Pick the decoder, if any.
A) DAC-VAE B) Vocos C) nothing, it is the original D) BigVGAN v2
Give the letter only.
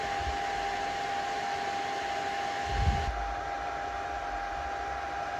C